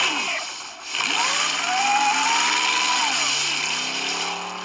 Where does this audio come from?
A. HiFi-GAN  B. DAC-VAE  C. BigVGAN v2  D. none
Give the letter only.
D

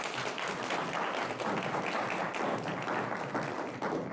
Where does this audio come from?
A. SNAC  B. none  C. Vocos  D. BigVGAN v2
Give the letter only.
B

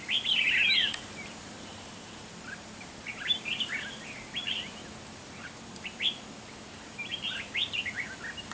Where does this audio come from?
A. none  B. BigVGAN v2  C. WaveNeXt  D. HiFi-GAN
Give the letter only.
A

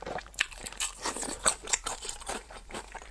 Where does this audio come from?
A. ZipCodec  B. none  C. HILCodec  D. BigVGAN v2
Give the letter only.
D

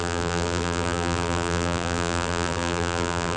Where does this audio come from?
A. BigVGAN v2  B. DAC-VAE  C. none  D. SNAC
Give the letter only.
A